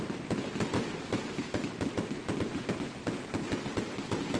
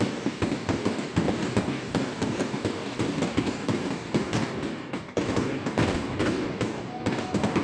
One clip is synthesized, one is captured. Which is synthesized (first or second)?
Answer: second